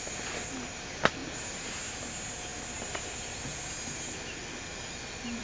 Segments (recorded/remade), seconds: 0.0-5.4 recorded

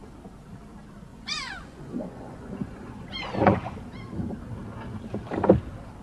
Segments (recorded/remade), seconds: 0.0-1.1 recorded; 1.1-3.7 remade; 3.7-6.0 recorded

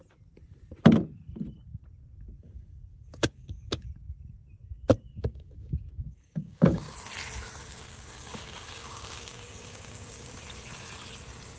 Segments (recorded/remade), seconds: 0.0-2.9 recorded; 2.9-3.9 remade; 3.9-5.1 recorded; 5.1-6.9 remade; 6.9-7.6 recorded; 7.6-10.3 remade; 10.3-11.6 recorded

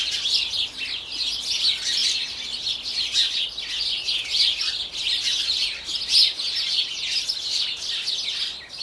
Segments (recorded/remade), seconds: 0.0-8.8 recorded

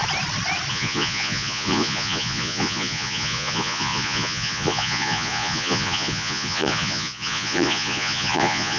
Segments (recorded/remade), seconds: 0.0-0.7 recorded; 0.7-8.8 remade

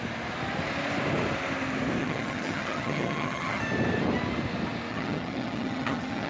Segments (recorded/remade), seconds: 0.0-2.0 recorded; 2.0-3.6 remade; 3.6-4.9 recorded; 4.9-6.3 remade

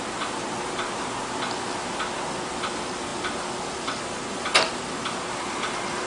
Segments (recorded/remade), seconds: 0.0-6.1 recorded